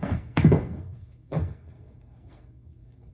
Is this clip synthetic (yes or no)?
yes